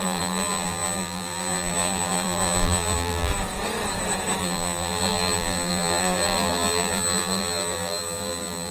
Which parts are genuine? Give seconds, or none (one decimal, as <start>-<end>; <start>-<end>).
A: 3.3-4.4